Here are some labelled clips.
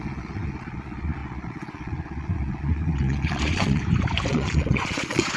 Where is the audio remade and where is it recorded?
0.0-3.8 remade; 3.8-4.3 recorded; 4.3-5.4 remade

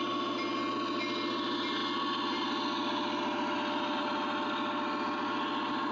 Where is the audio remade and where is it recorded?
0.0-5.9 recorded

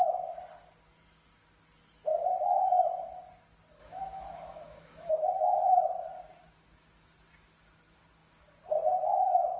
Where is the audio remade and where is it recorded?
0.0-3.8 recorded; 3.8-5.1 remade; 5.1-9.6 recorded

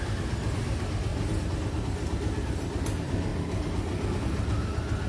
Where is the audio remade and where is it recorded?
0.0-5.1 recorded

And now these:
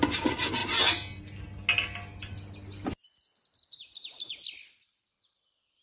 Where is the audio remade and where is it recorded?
0.0-5.8 recorded